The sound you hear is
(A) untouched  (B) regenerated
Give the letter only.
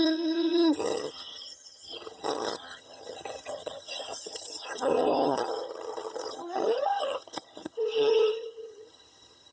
B